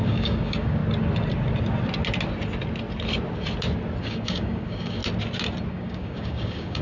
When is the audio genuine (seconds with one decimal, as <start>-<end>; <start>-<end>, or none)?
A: 0.8-4.0; 5.0-5.7